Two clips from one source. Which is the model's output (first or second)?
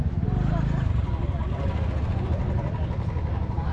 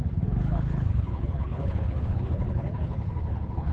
second